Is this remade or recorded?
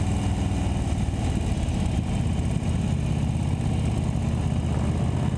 recorded